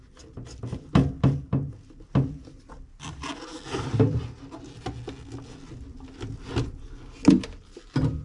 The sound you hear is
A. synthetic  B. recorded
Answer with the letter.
B